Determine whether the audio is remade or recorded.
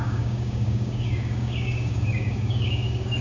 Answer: remade